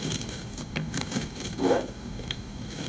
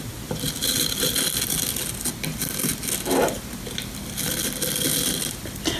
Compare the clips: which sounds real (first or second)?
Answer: second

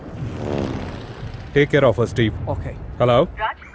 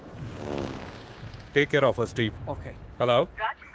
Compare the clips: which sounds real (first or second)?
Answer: first